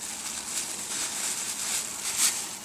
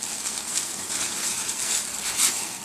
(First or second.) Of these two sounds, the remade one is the second